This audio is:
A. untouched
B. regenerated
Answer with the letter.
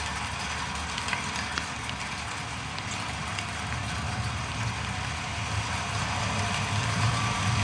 A